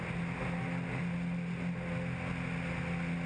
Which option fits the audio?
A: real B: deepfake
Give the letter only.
A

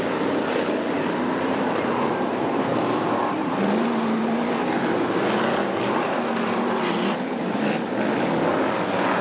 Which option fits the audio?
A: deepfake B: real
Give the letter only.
A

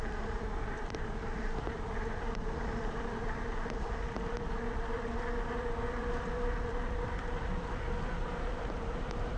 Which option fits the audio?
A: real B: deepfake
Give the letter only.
B